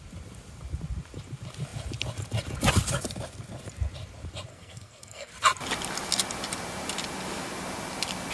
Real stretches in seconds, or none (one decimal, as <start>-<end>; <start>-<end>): 0.0-4.5; 5.3-8.3